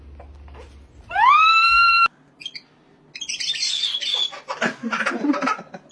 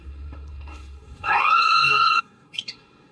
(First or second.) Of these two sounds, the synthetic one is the second